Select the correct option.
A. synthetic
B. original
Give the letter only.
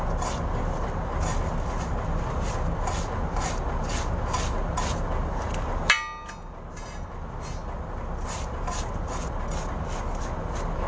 B